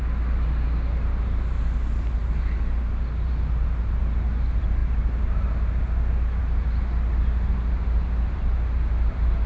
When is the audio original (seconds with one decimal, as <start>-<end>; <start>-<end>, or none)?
0.0-9.5